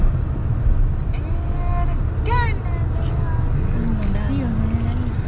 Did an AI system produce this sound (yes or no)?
no